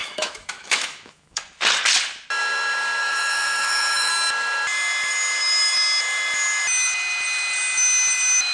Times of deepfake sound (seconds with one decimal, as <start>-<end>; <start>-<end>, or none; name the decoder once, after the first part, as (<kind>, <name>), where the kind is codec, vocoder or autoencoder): 0.0-1.4 (autoencoder, DAC-VAE); 3.0-4.1